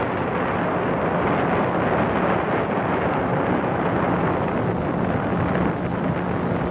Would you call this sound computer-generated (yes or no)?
no